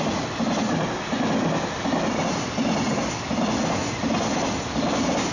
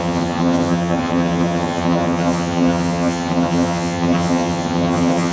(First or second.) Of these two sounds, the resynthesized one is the second